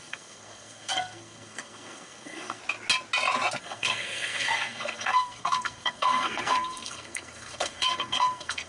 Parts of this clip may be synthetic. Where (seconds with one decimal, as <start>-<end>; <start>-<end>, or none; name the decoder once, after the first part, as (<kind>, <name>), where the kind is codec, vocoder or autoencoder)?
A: 0.0-2.6 (codec, SNAC); 3.6-8.7